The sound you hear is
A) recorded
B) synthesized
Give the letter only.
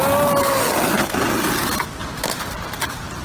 A